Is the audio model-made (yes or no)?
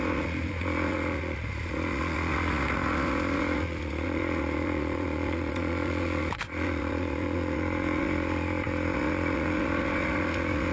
yes